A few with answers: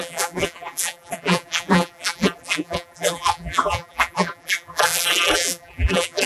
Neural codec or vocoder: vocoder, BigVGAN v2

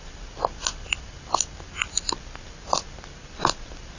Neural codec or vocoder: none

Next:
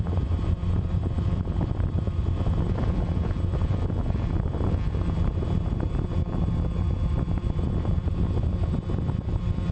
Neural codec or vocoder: vocoder, BigVGAN v2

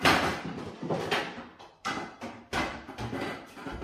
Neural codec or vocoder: none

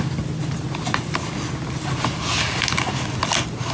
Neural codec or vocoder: none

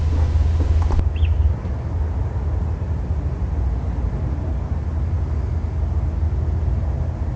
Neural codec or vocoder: none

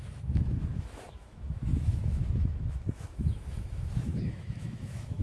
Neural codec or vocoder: autoencoder, DAC-VAE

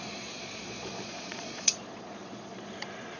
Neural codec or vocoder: vocoder, Vocos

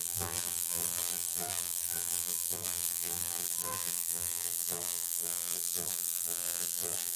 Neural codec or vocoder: vocoder, BigVGAN v2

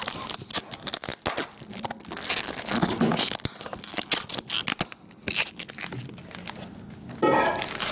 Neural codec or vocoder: none